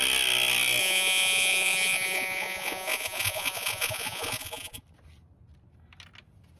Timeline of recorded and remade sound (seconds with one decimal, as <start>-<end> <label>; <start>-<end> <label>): 0.0-0.8 recorded; 0.8-4.8 remade; 4.8-6.6 recorded